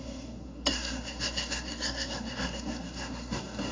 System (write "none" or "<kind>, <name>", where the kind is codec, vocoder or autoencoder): codec, SNAC